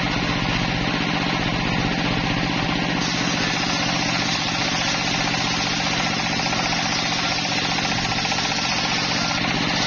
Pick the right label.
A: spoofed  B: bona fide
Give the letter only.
B